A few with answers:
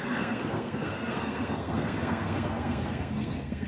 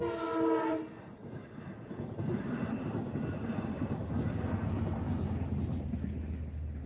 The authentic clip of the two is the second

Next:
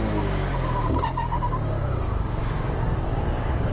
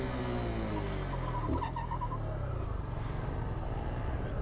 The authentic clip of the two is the second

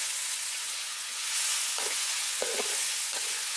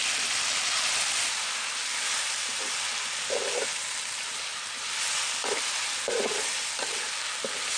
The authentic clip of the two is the second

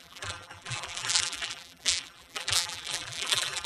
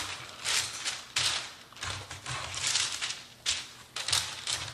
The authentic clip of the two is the second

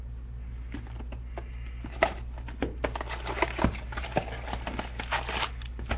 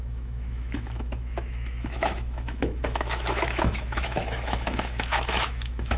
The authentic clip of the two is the first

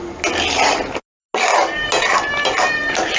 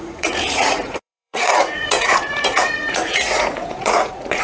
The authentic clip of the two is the first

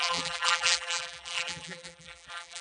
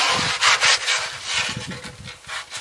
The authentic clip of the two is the second